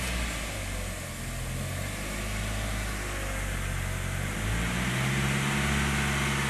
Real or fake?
real